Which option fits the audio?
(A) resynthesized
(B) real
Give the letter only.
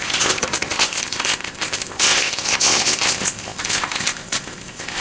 A